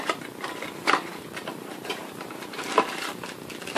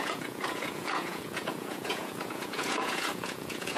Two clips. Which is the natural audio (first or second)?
first